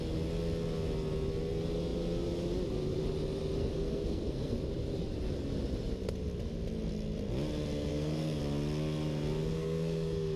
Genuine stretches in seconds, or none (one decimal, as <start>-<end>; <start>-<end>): 0.0-3.6; 4.6-7.9; 8.4-9.5

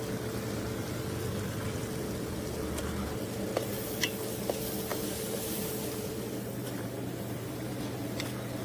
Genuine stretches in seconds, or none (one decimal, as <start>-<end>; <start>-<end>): 0.0-4.9; 7.7-8.6

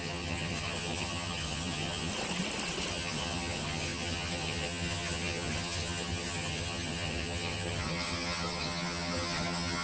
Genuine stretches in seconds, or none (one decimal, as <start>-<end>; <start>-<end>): 2.1-2.9

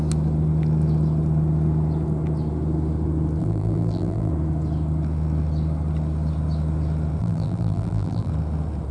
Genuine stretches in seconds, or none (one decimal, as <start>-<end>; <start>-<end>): 0.0-3.4; 4.3-7.2; 8.3-8.9